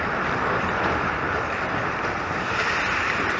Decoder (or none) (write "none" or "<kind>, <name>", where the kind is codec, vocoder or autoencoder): none